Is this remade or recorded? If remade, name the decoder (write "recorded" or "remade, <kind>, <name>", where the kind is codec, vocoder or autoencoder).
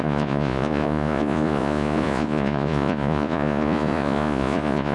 remade, vocoder, Vocos